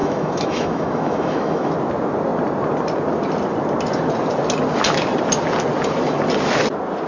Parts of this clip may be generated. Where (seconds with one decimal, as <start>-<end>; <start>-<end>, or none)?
0.0-1.7